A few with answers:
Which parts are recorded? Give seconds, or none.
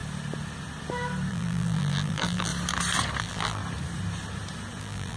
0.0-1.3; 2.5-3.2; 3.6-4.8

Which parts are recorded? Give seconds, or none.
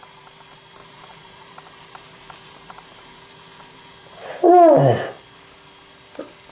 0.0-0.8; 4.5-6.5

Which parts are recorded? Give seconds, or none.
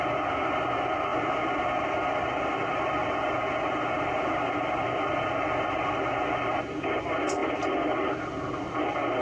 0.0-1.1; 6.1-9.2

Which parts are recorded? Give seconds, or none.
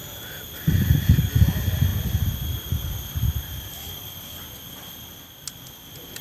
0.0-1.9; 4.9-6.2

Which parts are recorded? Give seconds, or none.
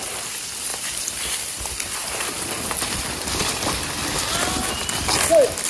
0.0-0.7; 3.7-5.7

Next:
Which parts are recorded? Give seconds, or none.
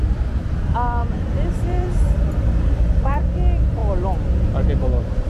0.0-1.0; 3.2-5.3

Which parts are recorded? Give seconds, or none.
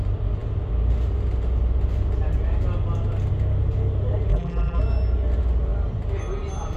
0.0-4.3; 4.8-6.8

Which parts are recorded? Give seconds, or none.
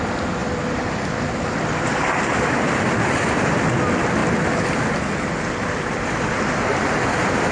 0.0-0.4; 1.6-4.2; 6.5-7.5